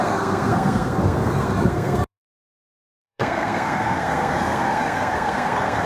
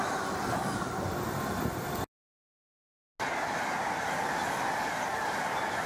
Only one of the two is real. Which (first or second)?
second